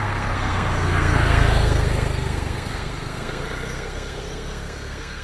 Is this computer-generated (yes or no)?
yes